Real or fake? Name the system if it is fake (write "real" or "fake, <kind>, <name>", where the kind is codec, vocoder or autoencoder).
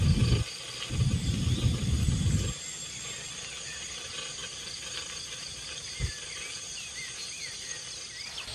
real